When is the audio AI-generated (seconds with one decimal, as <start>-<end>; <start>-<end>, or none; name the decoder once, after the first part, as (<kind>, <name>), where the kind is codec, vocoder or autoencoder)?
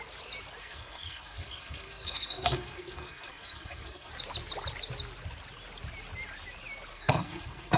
0.6-4.1 (codec, SNAC); 6.9-7.8